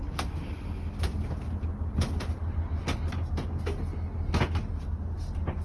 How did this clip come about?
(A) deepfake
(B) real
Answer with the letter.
B